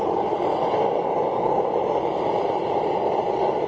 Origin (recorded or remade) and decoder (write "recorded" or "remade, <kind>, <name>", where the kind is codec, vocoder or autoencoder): recorded